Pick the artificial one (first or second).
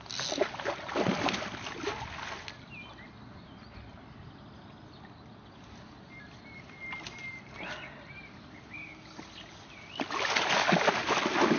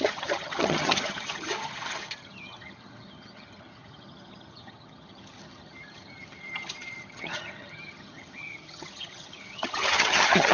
second